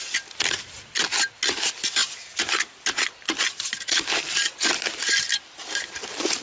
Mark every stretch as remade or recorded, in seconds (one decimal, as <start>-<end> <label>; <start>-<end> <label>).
0.0-6.4 recorded